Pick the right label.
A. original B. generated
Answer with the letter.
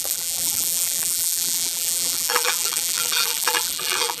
B